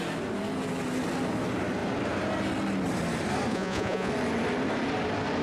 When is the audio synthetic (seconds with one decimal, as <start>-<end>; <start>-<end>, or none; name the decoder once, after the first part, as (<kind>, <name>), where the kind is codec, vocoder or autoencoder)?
3.5-4.1 (vocoder, Vocos)